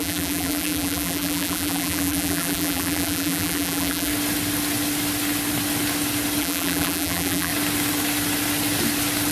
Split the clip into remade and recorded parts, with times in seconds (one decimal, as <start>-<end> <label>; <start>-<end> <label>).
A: 0.0-4.1 remade; 4.1-6.4 recorded; 6.4-7.5 remade; 7.5-9.3 recorded